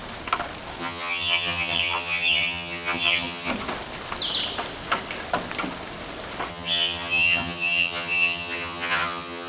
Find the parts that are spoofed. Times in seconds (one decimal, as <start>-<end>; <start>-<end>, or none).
0.8-3.5; 6.5-9.5